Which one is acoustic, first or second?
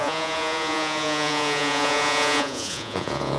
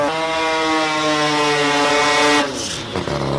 second